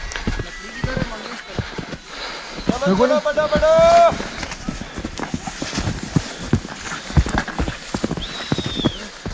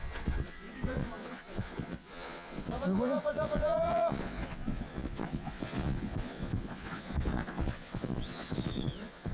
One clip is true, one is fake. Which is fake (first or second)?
second